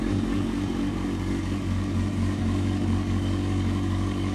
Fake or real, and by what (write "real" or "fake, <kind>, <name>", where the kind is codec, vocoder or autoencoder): fake, codec, DAC